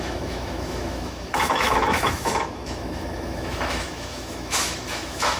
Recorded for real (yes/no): no